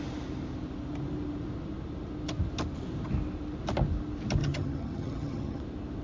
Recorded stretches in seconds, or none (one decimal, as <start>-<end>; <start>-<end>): 0.0-4.4; 5.6-6.0